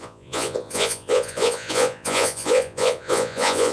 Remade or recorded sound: remade